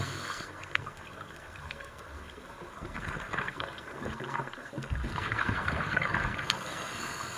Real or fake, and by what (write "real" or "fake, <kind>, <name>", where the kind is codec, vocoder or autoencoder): fake, codec, SNAC